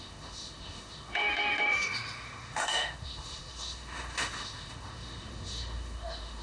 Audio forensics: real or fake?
fake